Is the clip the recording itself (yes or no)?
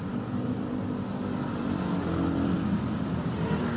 yes